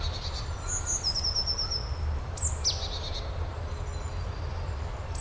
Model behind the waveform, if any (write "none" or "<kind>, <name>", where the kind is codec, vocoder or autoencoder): none